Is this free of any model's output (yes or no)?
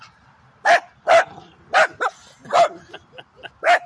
yes